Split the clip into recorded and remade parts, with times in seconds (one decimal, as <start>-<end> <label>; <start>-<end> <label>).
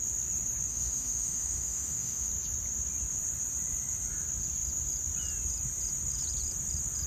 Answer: 0.0-0.7 recorded; 0.7-2.3 remade; 2.3-7.1 recorded